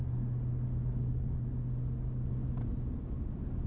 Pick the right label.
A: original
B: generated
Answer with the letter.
A